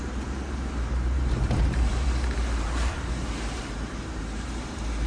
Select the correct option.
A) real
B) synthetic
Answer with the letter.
B